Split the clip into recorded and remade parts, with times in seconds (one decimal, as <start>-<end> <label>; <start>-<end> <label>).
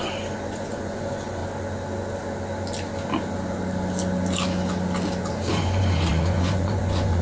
0.0-1.4 remade; 1.4-5.5 recorded; 5.5-7.2 remade